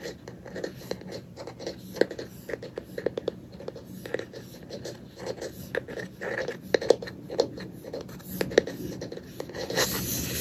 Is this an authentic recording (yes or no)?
yes